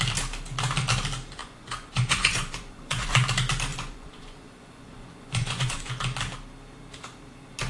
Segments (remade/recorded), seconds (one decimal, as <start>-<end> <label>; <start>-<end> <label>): 0.0-1.4 recorded; 1.4-3.1 remade; 3.1-3.7 recorded; 3.7-5.9 remade; 5.9-7.7 recorded